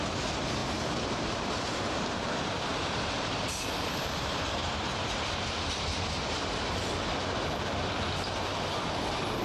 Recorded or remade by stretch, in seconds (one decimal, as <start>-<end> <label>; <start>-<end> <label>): 0.0-4.6 remade; 4.6-9.4 recorded

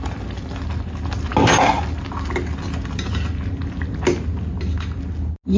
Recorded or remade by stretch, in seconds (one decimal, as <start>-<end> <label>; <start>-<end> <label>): 0.0-5.6 recorded